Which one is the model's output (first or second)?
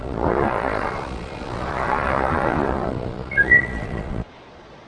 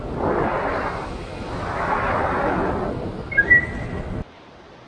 first